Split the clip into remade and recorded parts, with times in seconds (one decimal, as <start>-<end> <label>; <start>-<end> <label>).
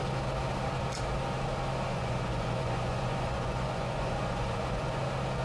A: 0.0-1.9 recorded; 1.9-5.0 remade; 5.0-5.4 recorded